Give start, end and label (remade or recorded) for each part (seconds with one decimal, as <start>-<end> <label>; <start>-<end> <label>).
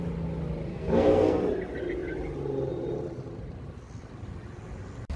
0.0-0.7 recorded; 0.7-1.4 remade; 1.4-5.2 recorded